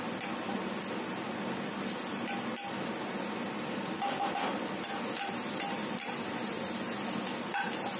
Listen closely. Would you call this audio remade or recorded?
recorded